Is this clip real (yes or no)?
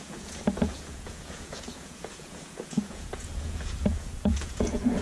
no